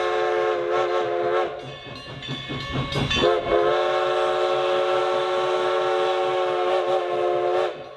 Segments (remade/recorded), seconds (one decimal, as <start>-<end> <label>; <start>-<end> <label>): 0.0-8.0 recorded